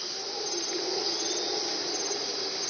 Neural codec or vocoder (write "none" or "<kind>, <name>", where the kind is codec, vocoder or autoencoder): none